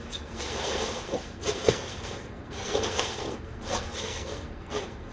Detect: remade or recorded remade